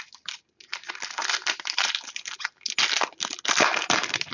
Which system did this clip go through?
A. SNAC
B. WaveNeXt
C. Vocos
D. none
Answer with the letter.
D